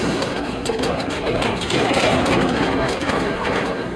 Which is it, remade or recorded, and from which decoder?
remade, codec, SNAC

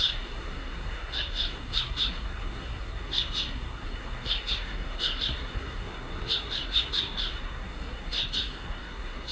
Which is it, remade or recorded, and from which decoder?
remade, codec, SNAC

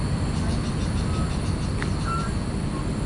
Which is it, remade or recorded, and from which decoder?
recorded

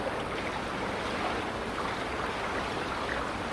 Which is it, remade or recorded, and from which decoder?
recorded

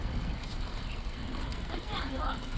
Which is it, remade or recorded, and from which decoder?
remade, codec, SNAC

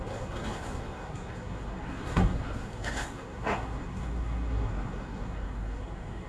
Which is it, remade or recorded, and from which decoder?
remade, codec, SNAC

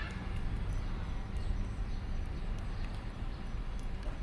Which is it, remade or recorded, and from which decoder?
recorded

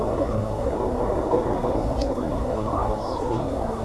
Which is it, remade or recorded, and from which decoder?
remade, codec, SNAC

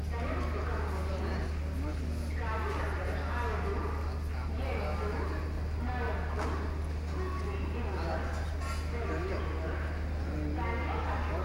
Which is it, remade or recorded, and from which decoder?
recorded